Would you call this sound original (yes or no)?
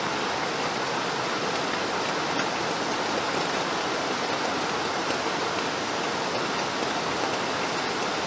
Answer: yes